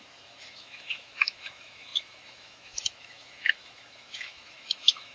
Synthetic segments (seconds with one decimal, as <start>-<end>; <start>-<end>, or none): 0.0-5.1